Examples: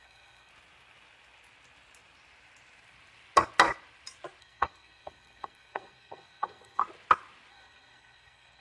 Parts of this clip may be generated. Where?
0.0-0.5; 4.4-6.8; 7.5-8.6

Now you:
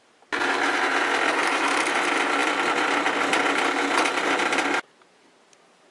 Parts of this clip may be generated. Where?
none

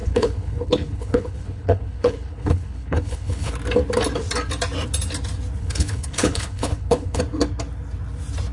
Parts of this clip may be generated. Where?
0.0-3.5; 5.6-7.2

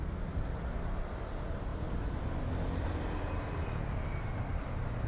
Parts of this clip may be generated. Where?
none

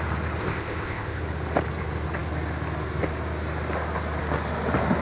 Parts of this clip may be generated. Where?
0.4-1.2

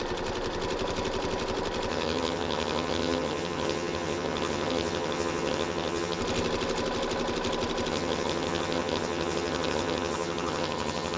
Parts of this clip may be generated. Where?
1.9-6.2; 7.9-11.2

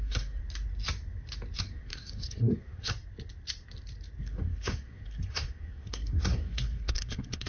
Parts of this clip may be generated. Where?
0.0-0.4; 1.6-2.9; 4.2-7.5

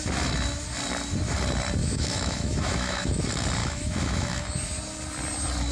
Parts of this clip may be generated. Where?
1.8-3.2; 3.6-4.4